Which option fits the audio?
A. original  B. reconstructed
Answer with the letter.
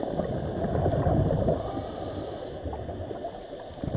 A